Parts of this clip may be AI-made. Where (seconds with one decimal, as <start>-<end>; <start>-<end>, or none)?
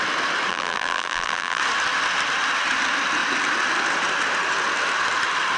0.5-1.6